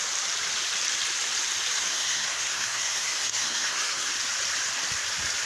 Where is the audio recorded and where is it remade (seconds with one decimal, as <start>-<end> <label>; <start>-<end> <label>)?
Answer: 0.0-1.9 recorded; 1.9-4.1 remade; 4.1-5.5 recorded